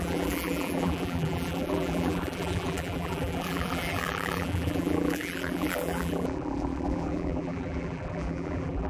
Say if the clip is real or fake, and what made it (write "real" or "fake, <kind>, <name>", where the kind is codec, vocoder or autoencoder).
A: fake, vocoder, BigVGAN v2